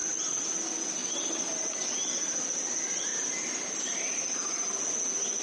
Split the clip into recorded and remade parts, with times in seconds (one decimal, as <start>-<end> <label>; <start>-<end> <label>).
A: 0.0-5.4 recorded